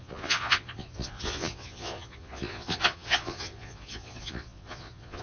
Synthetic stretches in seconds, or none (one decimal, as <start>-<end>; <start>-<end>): 0.0-5.2